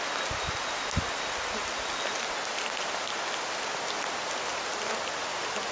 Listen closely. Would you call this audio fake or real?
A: real